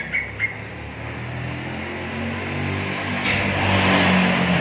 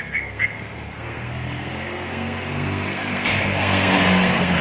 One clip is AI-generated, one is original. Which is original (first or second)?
first